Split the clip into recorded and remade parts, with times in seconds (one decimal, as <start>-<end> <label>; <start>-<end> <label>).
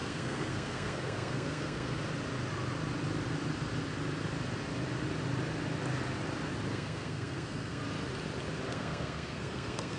0.0-2.0 remade; 2.0-6.7 recorded; 6.7-7.8 remade; 7.8-8.7 recorded; 8.7-10.0 remade